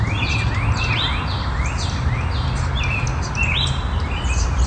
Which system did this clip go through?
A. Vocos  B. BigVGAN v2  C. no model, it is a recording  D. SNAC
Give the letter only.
C